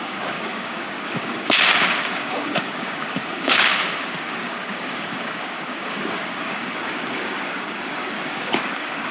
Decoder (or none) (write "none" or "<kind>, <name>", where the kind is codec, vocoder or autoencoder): codec, DAC